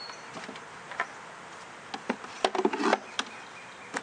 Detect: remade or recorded recorded